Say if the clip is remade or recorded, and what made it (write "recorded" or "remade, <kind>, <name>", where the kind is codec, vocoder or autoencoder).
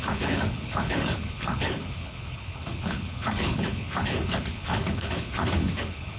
remade, codec, HILCodec